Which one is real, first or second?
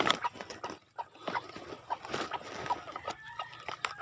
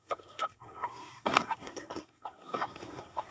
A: first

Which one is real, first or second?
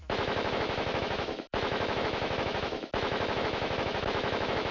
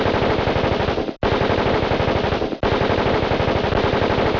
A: second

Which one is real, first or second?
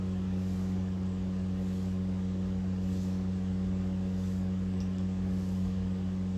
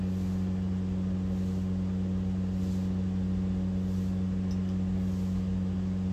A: second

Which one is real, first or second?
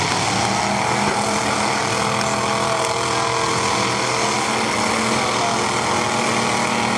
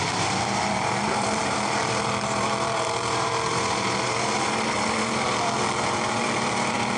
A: first